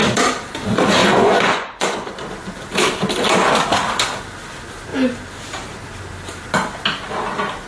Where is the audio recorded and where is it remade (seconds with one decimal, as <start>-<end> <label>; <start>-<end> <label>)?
0.0-1.0 recorded; 1.0-2.1 remade; 2.1-7.7 recorded